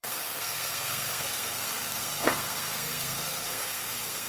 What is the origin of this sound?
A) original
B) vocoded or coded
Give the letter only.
B